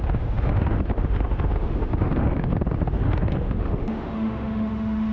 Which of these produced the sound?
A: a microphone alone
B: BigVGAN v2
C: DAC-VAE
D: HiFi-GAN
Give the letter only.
C